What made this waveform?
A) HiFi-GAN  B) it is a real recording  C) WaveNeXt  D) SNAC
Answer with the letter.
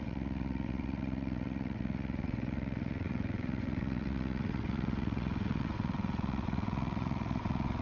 C